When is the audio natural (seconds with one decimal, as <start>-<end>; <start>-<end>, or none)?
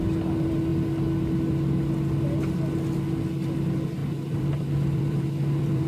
0.0-4.0